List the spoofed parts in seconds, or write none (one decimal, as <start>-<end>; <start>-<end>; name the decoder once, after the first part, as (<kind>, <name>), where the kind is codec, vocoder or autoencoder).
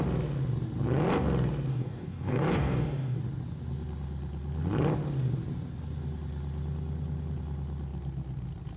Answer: 1.7-3.2 (codec, DAC)